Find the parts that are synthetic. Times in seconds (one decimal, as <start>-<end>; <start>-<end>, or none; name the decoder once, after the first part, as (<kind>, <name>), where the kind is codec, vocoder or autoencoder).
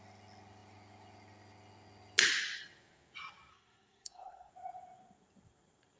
3.5-4.5 (codec, SNAC)